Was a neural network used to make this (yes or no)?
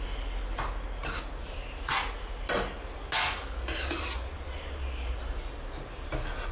no